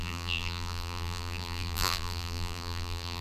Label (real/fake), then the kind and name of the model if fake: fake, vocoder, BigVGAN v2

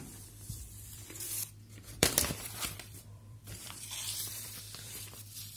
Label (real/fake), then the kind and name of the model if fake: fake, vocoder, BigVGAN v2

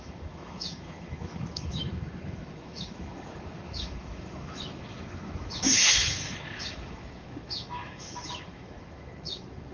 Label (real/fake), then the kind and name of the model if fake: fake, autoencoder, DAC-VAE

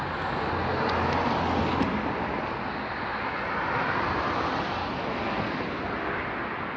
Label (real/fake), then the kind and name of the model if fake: real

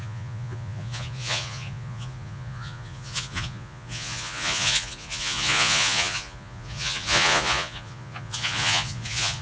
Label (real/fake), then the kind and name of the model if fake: fake, vocoder, Vocos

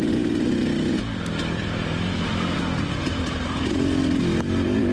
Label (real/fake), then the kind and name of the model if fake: real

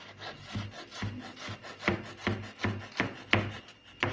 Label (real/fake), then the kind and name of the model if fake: real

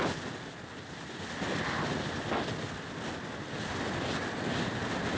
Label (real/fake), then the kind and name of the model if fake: real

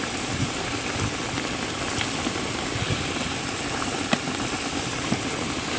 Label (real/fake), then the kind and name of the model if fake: real